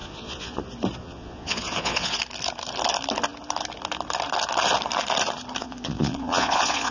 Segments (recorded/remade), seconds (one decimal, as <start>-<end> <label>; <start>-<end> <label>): 0.0-0.6 remade; 0.6-1.0 recorded; 1.0-2.2 remade; 2.2-5.6 recorded; 5.6-6.9 remade